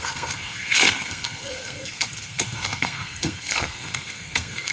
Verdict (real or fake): fake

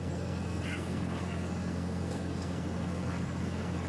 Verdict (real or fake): fake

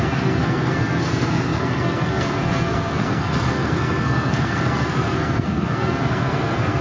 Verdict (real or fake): fake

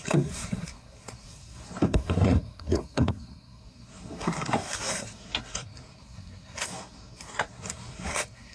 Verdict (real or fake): fake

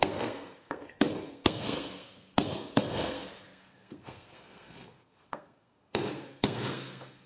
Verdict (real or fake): fake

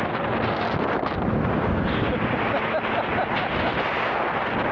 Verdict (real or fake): real